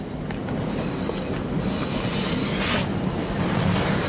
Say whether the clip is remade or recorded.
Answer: recorded